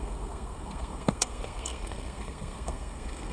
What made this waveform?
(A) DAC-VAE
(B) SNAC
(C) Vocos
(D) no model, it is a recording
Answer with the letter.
B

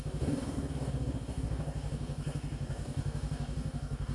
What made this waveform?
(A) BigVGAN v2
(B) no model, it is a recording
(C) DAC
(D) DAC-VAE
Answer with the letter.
C